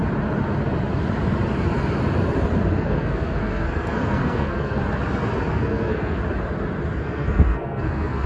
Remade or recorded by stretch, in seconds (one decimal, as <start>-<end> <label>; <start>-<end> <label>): 0.0-2.7 recorded; 2.7-4.8 remade; 4.8-5.5 recorded; 5.5-6.2 remade; 6.2-7.0 recorded; 7.0-8.3 remade